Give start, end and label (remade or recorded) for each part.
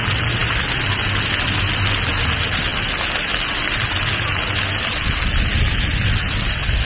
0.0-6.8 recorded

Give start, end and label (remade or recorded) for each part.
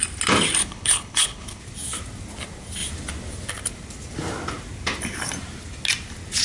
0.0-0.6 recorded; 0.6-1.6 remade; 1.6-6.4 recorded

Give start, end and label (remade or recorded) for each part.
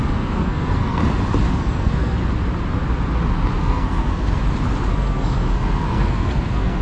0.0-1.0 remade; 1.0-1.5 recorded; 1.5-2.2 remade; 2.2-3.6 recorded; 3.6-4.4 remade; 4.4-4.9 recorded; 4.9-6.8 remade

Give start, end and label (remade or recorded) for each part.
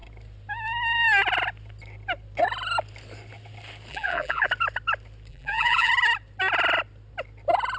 0.0-3.9 recorded; 3.9-4.5 remade; 4.5-5.3 recorded; 5.3-5.9 remade; 5.9-7.8 recorded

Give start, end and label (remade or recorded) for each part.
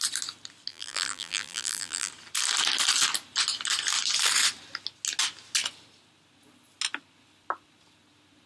0.0-0.7 recorded; 0.7-2.1 remade; 2.1-8.5 recorded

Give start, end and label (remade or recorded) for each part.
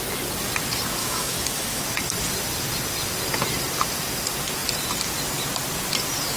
0.0-1.0 recorded; 1.0-1.9 remade; 1.9-6.4 recorded